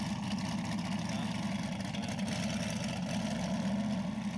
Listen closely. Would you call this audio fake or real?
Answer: real